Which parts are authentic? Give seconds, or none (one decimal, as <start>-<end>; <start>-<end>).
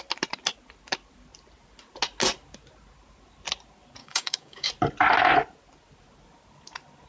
0.0-4.0; 4.7-7.1